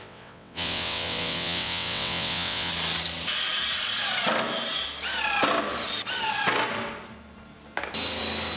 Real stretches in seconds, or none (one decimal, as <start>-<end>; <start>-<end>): 2.7-8.6